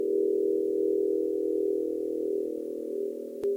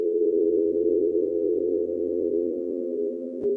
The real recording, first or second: first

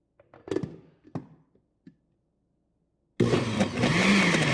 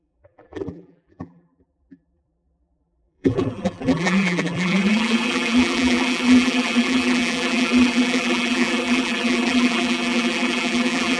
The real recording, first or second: first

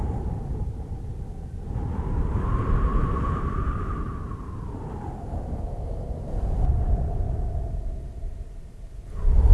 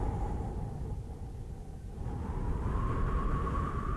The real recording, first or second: second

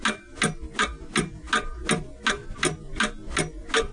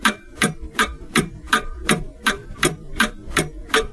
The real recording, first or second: first